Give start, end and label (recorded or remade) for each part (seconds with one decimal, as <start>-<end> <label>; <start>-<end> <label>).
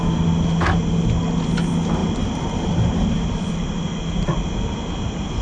0.0-5.4 recorded